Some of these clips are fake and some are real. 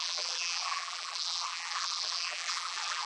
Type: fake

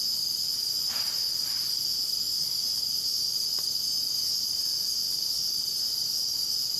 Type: real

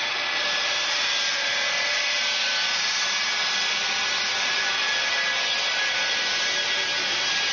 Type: real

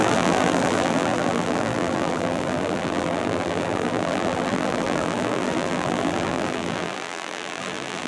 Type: fake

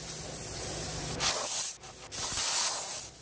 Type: real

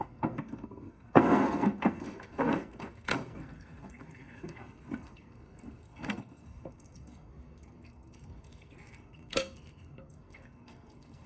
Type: fake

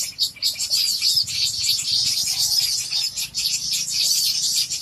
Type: real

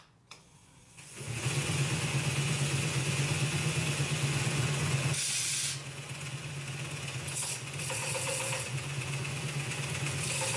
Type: fake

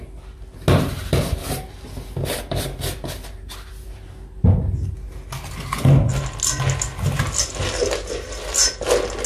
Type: real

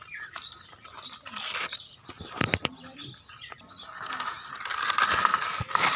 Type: real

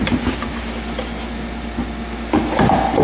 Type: real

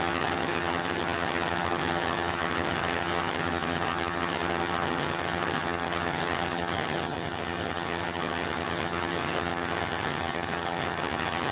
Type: fake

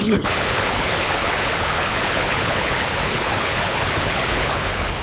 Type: fake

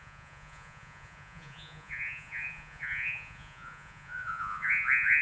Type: fake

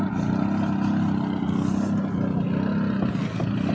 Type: real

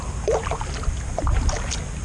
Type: real